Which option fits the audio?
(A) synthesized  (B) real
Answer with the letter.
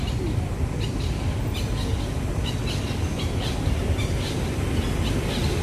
B